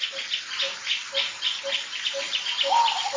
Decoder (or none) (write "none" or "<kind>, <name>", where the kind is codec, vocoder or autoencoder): none